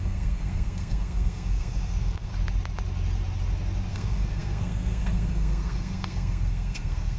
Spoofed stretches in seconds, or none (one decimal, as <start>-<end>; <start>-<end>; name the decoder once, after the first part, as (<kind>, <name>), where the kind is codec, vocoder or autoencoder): 0.0-2.3 (codec, SNAC); 3.9-7.2